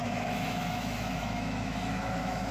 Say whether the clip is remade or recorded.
remade